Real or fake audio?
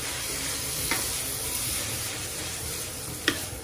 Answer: fake